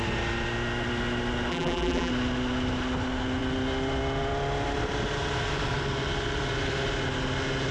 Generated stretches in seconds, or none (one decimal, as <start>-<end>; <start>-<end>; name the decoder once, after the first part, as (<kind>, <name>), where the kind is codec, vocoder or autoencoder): 1.5-2.1 (vocoder, BigVGAN v2)